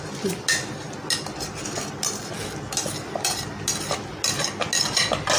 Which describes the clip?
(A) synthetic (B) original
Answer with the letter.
B